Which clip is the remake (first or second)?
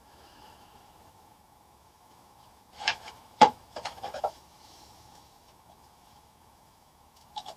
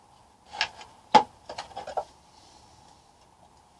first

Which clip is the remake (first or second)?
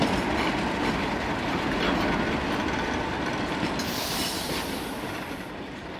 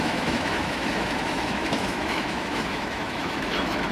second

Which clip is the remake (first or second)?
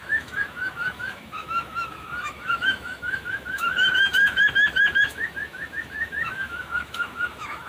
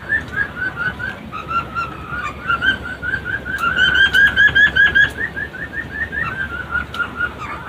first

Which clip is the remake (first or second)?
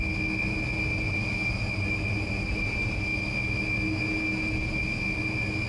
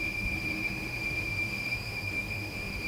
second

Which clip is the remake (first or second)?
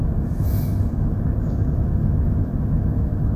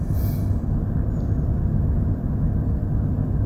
first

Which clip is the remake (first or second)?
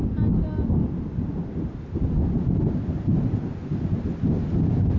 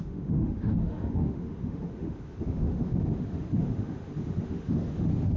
second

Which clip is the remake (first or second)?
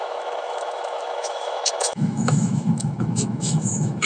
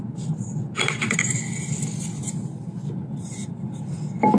first